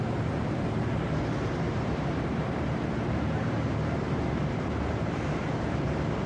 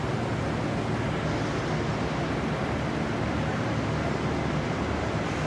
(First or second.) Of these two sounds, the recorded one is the second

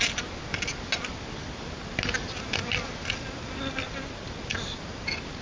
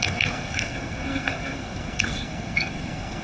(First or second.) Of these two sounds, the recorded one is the first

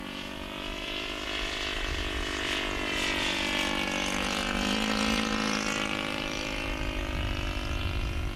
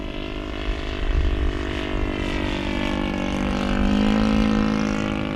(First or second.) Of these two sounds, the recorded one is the second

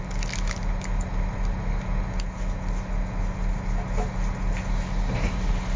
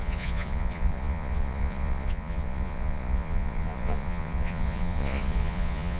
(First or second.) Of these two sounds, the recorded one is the first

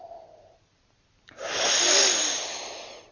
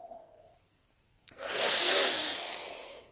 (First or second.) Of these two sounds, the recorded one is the first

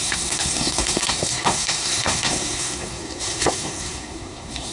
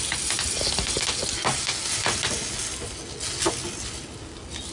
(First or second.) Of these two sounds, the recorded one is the second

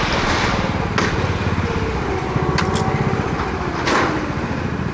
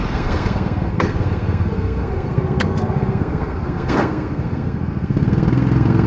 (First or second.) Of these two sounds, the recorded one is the first